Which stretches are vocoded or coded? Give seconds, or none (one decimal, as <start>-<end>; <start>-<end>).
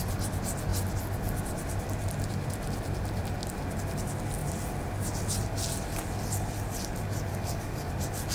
7.3-7.9